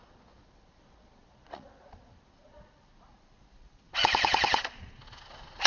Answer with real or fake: fake